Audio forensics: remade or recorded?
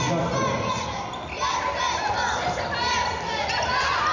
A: recorded